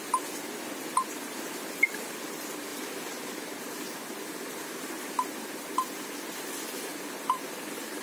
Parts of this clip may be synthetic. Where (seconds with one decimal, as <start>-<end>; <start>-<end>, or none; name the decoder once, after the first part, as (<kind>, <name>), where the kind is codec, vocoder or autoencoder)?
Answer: 2.7-3.2 (vocoder, BigVGAN v2)